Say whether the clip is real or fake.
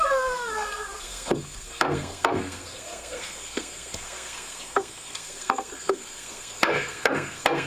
fake